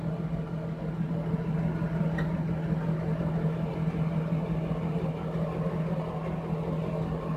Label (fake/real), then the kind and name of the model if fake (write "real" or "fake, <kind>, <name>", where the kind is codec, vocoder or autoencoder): real